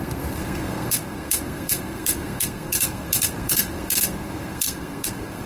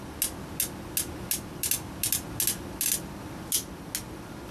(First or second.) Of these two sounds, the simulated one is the first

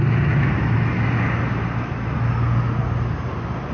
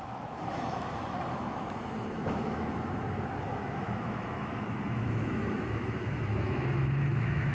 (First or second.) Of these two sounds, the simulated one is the second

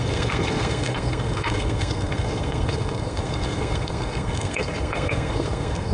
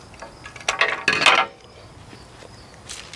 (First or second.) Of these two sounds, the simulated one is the first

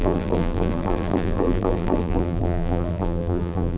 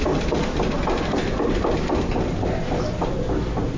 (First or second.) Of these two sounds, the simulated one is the first